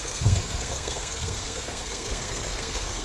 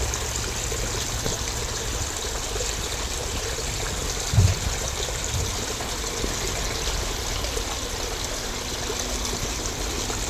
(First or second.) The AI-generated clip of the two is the first